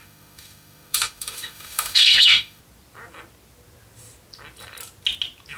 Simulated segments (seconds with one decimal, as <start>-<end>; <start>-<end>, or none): 0.0-2.6